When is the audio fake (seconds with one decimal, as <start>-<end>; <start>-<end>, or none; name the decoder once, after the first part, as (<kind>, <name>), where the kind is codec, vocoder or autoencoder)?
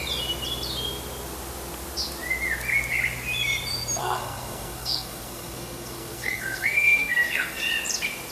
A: 4.0-7.6 (codec, SNAC)